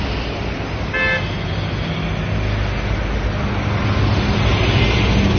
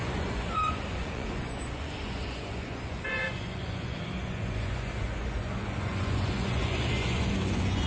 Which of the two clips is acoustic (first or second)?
first